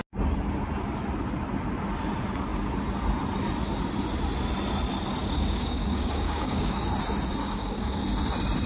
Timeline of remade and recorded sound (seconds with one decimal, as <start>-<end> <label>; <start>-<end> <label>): 0.0-5.2 recorded; 5.2-6.8 remade; 6.8-7.4 recorded; 7.4-8.0 remade; 8.0-8.7 recorded